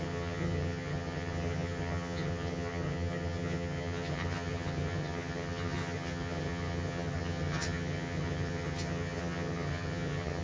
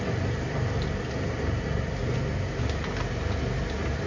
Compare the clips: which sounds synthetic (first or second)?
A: first